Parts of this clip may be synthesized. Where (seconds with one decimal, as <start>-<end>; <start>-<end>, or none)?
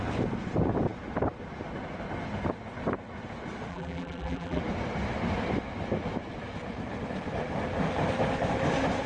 3.7-4.6